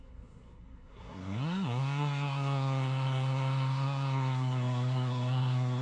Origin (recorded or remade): remade